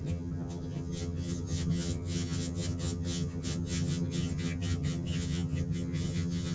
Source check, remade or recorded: remade